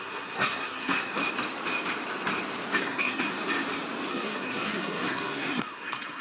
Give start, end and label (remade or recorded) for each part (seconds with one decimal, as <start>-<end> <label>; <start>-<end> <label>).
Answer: 0.0-1.2 remade; 1.2-2.8 recorded; 2.8-3.3 remade; 3.3-4.1 recorded; 4.1-6.2 remade